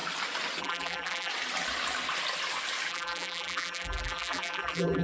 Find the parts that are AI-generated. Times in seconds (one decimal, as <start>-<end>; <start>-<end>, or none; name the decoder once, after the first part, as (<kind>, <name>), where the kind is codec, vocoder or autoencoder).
0.6-1.3 (vocoder, BigVGAN v2); 2.9-5.0